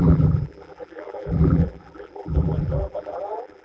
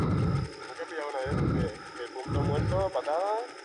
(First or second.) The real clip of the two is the second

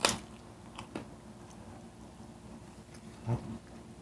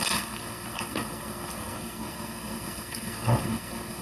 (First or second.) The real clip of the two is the first